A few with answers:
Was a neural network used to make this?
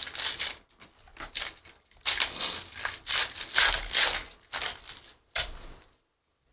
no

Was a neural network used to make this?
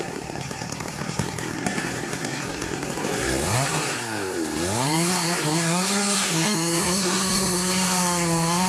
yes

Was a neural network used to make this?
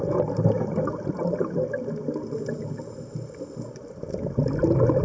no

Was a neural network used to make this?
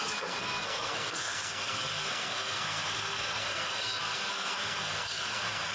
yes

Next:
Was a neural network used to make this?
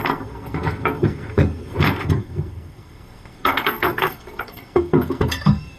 yes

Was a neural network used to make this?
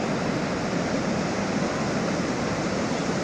no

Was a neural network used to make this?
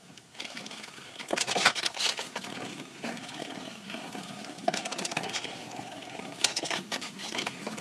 yes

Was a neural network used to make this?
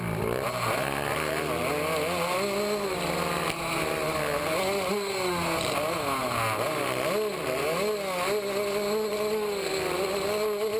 no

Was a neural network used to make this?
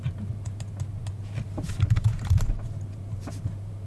no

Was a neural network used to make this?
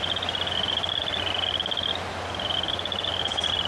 no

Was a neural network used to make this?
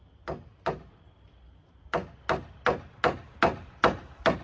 no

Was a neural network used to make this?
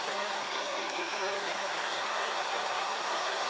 yes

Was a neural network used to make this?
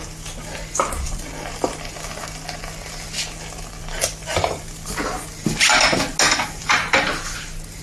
no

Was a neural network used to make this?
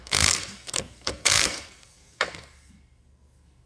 yes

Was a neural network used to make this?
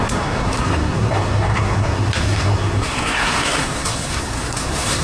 yes